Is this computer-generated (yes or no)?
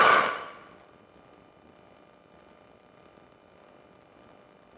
no